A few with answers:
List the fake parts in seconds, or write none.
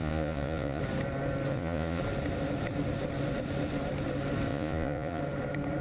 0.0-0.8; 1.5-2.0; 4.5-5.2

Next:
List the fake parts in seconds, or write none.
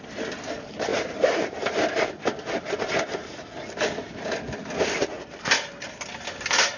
none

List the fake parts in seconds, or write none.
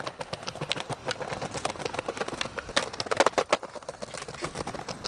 none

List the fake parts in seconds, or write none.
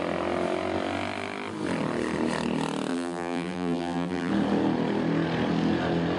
2.9-4.3